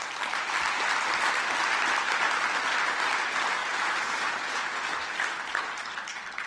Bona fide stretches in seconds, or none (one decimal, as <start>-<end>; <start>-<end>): 0.0-3.6; 4.9-6.5